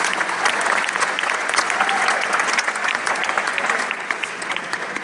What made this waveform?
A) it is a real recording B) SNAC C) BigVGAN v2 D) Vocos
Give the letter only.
D